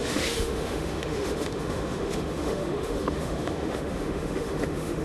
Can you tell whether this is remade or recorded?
remade